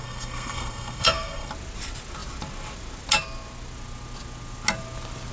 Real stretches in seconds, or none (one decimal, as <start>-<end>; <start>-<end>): 1.5-5.3